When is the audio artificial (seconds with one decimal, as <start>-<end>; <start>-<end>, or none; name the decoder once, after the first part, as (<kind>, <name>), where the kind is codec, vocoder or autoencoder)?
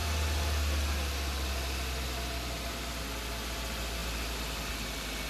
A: none